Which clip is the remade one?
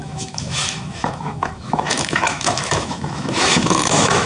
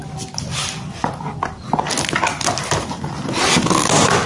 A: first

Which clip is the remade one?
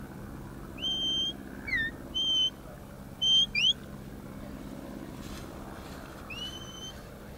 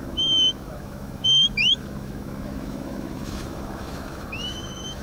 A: second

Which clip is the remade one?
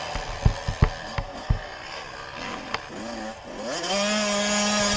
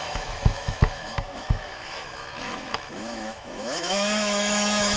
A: second